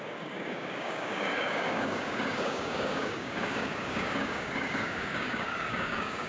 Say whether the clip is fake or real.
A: fake